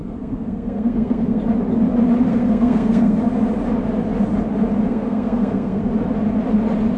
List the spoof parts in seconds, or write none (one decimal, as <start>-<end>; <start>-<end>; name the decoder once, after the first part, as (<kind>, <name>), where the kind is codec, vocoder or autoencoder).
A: 0.0-1.4 (codec, SNAC); 2.3-3.2; 4.9-5.8